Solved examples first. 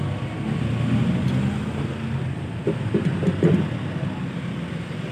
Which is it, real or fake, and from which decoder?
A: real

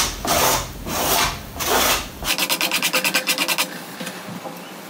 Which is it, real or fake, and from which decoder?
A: real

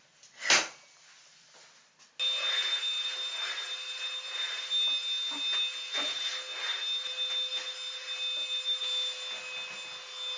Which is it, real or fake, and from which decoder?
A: real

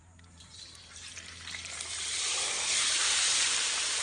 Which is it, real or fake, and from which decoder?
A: fake, vocoder, BigVGAN v2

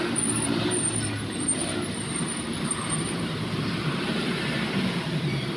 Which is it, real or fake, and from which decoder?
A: fake, vocoder, BigVGAN v2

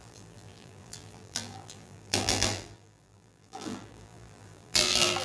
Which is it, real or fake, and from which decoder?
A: fake, vocoder, BigVGAN v2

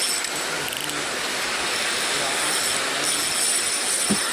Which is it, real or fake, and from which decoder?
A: real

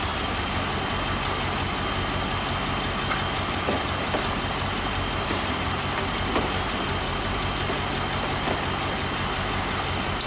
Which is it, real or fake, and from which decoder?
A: real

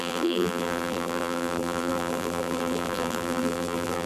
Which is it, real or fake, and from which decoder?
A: fake, vocoder, BigVGAN v2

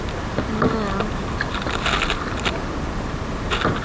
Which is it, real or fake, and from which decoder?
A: real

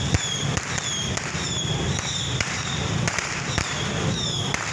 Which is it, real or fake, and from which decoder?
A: fake, vocoder, BigVGAN v2